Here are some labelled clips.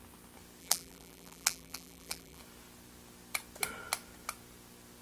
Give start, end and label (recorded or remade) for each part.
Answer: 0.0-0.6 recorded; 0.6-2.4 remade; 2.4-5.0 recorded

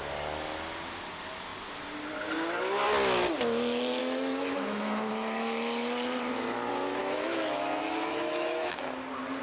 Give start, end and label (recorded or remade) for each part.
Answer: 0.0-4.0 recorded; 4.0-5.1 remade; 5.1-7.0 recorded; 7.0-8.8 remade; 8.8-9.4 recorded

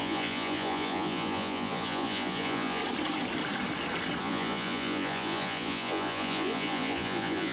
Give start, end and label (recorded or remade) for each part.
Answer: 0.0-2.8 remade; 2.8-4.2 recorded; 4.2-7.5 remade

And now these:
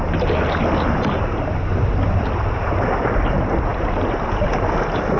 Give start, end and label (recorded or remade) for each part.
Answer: 0.0-5.2 recorded

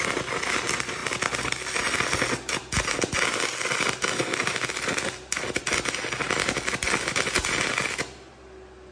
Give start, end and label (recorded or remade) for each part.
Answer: 0.0-8.9 recorded

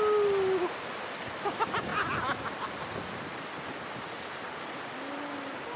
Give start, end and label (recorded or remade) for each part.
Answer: 0.0-5.8 recorded

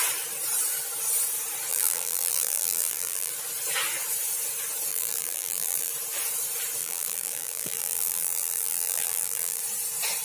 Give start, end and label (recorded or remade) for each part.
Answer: 0.0-1.7 recorded; 1.7-3.3 remade; 3.3-4.9 recorded; 4.9-5.9 remade; 5.9-6.8 recorded; 6.8-9.6 remade; 9.6-10.2 recorded

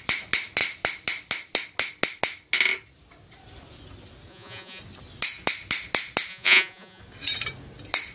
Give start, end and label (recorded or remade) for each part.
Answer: 0.0-4.3 recorded; 4.3-4.8 remade; 4.8-6.3 recorded; 6.3-7.0 remade; 7.0-8.1 recorded